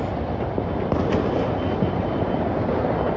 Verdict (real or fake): real